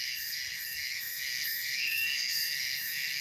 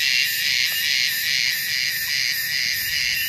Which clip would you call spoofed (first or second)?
first